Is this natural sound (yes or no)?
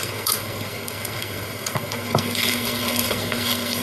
no